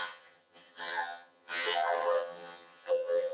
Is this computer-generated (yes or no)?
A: yes